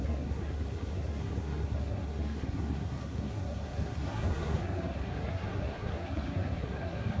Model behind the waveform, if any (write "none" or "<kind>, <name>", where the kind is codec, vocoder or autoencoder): codec, SNAC